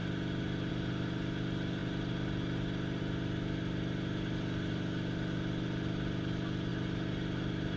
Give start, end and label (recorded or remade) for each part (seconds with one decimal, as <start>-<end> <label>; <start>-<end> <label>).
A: 0.0-7.8 recorded